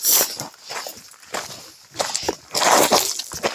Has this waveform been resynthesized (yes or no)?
no